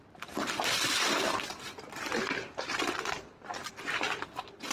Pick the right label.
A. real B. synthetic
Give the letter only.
B